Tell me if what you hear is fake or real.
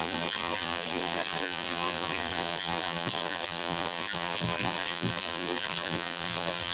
fake